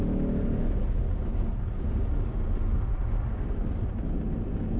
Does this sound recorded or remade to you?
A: recorded